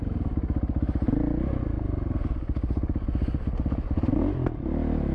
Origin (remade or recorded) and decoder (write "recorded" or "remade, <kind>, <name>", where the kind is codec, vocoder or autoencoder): recorded